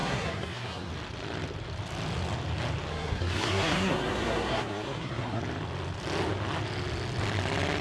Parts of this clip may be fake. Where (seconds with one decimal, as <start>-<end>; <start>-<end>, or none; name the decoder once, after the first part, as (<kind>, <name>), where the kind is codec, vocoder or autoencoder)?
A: 0.0-0.9 (codec, SNAC); 2.9-5.4